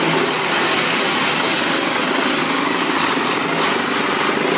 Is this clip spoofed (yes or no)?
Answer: no